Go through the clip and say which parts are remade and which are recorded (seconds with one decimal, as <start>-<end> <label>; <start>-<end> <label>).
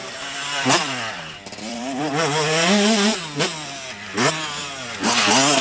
0.0-3.2 remade; 3.2-5.6 recorded